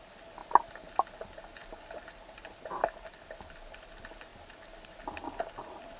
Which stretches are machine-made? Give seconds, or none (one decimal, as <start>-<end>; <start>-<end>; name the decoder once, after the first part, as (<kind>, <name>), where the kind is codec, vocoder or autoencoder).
none